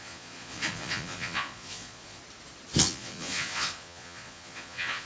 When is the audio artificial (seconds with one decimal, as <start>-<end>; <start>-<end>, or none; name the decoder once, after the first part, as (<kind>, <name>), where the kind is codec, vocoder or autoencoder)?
0.0-2.2 (vocoder, Vocos); 2.8-5.1